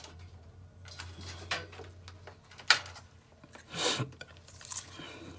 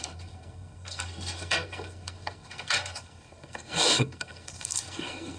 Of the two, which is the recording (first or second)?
first